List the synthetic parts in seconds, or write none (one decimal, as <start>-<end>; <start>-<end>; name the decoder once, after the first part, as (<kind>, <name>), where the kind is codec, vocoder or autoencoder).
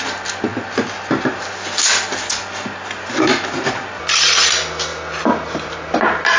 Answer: none